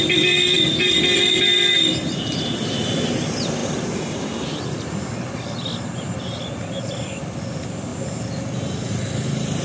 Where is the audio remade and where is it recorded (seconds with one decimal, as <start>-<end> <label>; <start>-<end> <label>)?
0.0-7.9 remade; 7.9-8.9 recorded; 8.9-9.6 remade